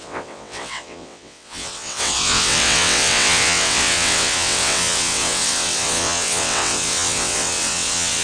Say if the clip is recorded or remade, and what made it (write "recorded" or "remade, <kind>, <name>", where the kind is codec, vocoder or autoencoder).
remade, vocoder, WaveNeXt